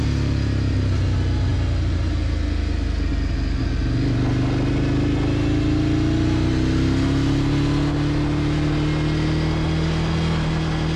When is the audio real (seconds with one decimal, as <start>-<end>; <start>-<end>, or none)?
0.0-11.0